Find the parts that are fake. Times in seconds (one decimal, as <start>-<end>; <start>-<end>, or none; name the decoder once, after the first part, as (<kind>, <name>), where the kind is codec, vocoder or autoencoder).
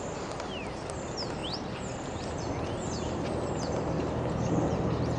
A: none